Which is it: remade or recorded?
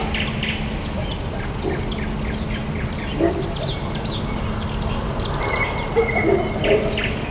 recorded